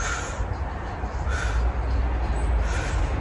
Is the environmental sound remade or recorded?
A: recorded